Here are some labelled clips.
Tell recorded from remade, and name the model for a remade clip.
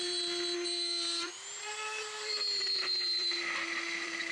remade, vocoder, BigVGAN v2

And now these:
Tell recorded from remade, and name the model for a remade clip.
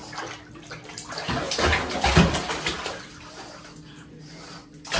recorded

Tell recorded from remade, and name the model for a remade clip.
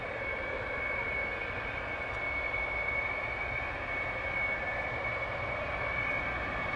recorded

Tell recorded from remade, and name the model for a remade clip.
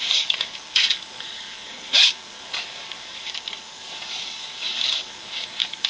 remade, codec, DAC